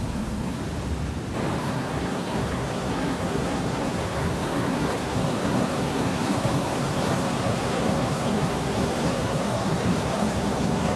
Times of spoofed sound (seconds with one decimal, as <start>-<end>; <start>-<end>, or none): 0.0-0.6; 1.6-11.0